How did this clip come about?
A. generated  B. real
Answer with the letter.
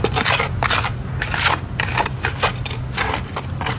B